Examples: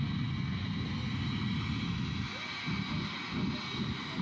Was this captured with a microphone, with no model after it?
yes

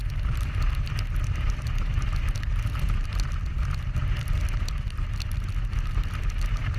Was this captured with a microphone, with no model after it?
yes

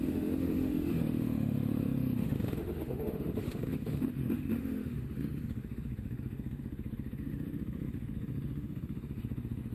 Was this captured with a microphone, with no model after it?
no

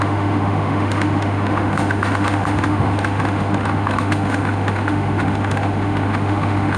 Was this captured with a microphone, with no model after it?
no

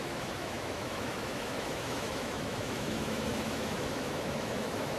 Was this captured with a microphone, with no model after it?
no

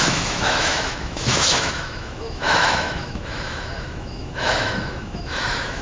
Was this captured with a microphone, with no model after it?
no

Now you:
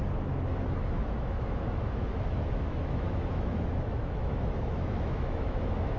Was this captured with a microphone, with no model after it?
no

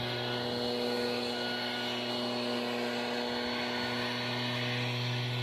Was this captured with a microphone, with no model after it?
yes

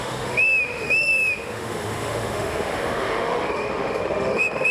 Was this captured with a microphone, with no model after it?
no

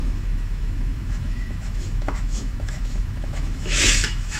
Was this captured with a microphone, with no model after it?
no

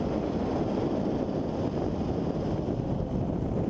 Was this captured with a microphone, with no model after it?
yes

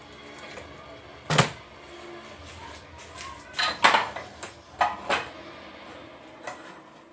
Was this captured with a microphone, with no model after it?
yes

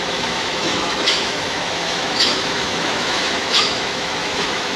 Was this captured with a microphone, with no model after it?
no